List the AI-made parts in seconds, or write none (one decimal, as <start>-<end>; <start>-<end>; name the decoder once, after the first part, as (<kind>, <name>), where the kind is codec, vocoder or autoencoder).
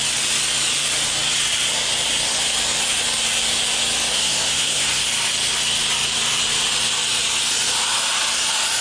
4.1-5.0 (codec, SNAC)